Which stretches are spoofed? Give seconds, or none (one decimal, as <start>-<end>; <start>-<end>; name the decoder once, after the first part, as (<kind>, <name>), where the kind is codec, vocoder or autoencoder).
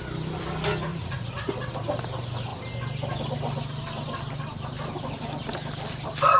0.9-1.5 (vocoder, Vocos)